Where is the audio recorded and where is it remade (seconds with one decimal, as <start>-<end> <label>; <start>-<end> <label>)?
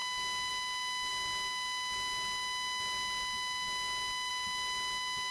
0.0-5.3 recorded